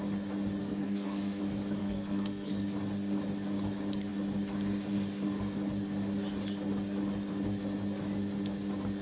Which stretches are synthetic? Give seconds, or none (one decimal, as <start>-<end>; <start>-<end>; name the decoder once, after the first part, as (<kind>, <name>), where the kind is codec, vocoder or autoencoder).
0.6-1.4 (codec, SNAC); 1.8-2.5